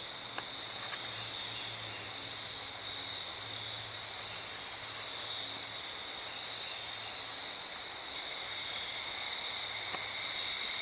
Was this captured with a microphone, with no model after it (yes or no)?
yes